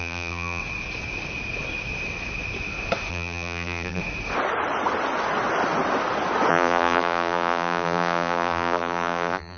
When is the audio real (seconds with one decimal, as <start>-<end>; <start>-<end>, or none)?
0.6-3.1; 4.0-6.5